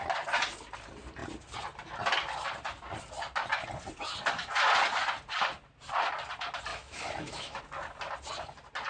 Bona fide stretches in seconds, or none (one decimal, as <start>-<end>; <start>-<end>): 0.0-6.7; 7.6-8.9